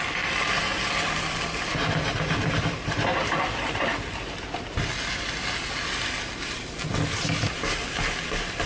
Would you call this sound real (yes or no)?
yes